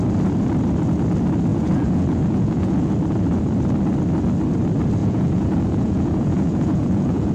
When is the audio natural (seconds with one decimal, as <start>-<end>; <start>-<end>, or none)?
0.0-1.5; 2.9-5.0